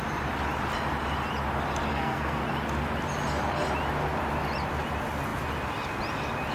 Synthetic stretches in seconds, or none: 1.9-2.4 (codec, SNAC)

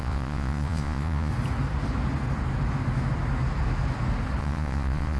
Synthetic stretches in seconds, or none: 0.0-1.3 (vocoder, Vocos); 4.4-5.2

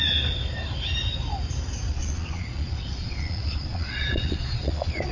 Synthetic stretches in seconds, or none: 1.9-5.1 (vocoder, Vocos)

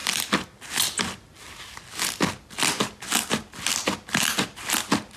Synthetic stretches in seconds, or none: none

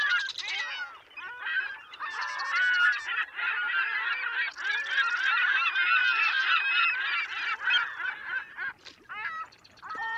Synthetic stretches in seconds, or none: none

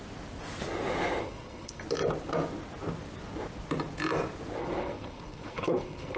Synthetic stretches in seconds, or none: 1.2-1.8 (codec, SNAC); 4.6-6.2

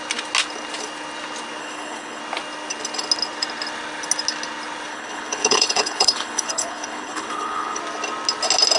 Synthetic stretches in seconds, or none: 1.6-2.2 (codec, HILCodec); 4.9-7.8

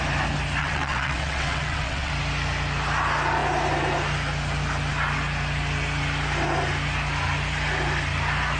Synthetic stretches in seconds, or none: 0.6-2.1 (vocoder, WaveNeXt)